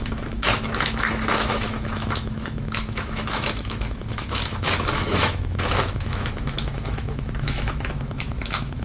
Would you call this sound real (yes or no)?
no